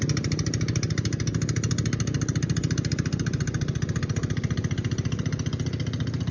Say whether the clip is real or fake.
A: real